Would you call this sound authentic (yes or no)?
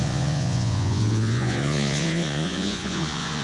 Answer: no